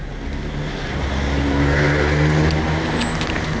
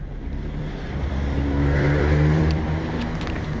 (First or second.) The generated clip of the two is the second